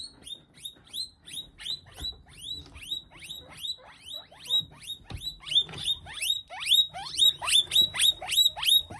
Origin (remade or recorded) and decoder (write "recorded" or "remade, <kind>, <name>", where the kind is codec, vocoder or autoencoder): recorded